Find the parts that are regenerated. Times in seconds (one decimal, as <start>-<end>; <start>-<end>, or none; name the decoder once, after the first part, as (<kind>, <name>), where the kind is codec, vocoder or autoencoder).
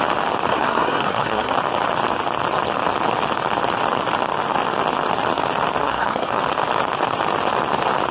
0.5-1.5 (codec, SNAC); 5.8-6.4